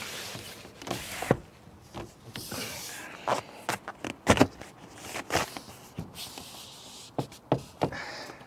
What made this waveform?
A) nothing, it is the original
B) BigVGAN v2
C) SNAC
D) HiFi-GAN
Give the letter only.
A